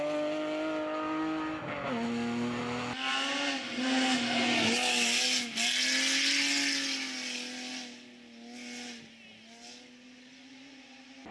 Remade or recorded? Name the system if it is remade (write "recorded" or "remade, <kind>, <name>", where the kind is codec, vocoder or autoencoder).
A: recorded